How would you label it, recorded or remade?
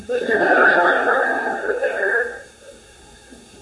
remade